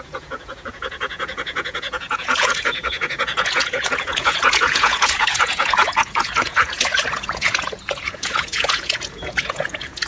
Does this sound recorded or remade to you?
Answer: remade